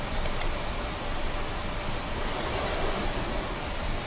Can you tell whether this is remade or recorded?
recorded